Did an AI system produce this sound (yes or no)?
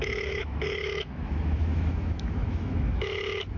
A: yes